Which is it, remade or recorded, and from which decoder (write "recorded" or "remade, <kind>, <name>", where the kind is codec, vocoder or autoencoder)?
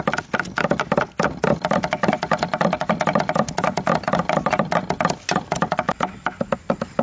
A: recorded